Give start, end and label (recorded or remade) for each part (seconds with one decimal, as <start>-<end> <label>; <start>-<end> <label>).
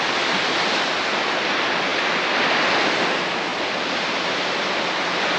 0.0-5.4 recorded